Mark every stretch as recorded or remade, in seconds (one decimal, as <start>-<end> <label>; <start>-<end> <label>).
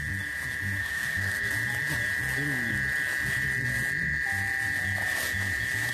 0.0-0.8 recorded; 0.8-1.5 remade; 1.5-5.9 recorded